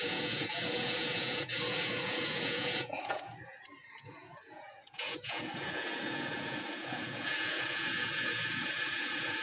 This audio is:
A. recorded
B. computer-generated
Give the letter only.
B